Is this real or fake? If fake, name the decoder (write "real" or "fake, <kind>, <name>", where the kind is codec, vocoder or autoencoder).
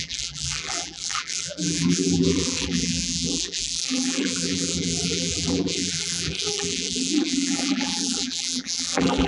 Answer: fake, vocoder, BigVGAN v2